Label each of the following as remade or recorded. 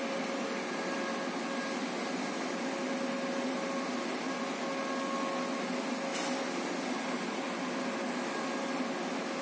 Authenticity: recorded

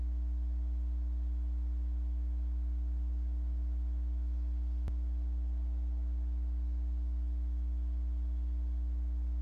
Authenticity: recorded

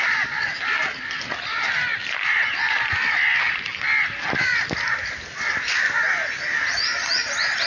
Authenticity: recorded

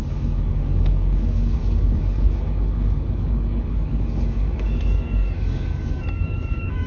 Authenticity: remade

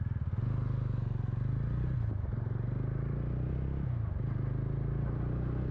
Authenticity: recorded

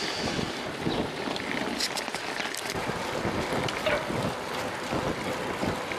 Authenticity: recorded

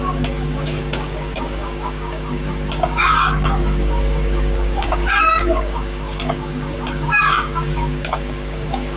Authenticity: remade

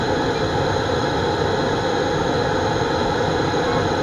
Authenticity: recorded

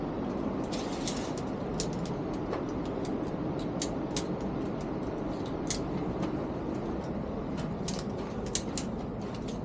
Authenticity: recorded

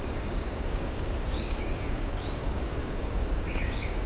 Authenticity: remade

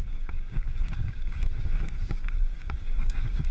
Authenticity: remade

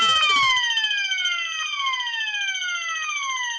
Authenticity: recorded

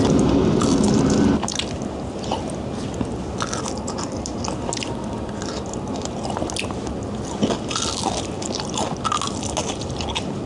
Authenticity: recorded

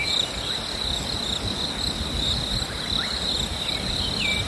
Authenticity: recorded